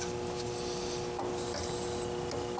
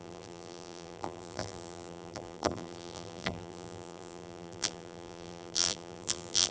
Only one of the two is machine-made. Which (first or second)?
second